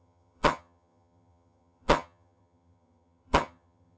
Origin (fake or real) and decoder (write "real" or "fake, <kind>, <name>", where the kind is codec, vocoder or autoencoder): fake, vocoder, HiFi-GAN